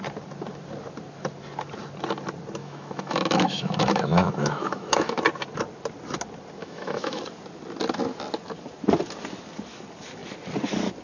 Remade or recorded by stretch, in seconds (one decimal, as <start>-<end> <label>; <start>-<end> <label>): 0.0-2.6 recorded; 2.6-5.2 remade; 5.2-6.6 recorded; 6.6-7.2 remade; 7.2-11.0 recorded